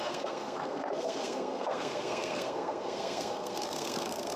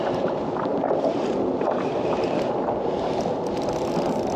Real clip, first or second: second